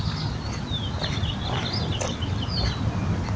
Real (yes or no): yes